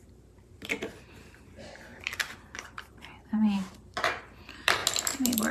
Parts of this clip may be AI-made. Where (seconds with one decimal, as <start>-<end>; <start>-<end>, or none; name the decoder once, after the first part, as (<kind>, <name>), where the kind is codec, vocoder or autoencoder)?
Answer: 0.0-4.8 (vocoder, BigVGAN v2)

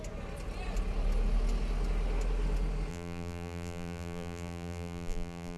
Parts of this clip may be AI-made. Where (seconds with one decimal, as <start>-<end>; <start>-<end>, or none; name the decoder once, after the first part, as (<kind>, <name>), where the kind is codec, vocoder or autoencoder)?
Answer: 2.9-5.6 (vocoder, BigVGAN v2)

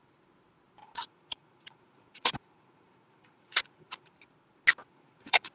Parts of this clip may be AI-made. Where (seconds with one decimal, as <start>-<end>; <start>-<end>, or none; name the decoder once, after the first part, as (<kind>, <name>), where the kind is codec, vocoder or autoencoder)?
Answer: 0.8-4.1 (vocoder, Vocos); 4.8-5.5

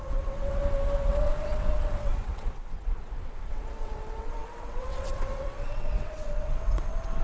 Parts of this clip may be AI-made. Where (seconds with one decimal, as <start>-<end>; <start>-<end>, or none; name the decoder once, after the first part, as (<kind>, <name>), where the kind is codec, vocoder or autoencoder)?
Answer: 0.0-0.6 (vocoder, WaveNeXt); 1.1-7.2

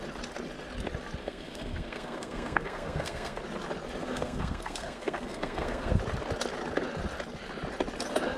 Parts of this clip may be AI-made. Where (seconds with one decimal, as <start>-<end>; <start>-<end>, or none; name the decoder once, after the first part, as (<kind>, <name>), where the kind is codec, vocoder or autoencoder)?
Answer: 1.2-3.4 (codec, SNAC); 4.0-6.0

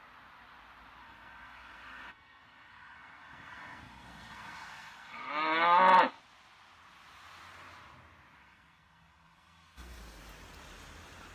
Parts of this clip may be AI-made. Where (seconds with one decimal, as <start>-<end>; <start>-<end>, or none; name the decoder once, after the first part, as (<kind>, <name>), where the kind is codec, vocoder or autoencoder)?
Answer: 1.0-5.3 (codec, SNAC); 8.4-10.0